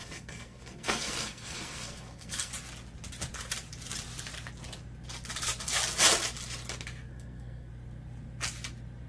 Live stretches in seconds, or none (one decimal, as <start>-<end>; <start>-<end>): 2.5-7.1; 7.7-9.1